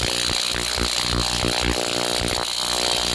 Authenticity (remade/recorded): recorded